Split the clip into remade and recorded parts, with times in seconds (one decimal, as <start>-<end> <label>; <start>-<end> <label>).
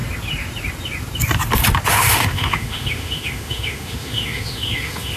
0.0-1.9 recorded; 1.9-5.2 remade